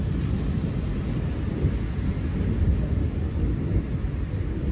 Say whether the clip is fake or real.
real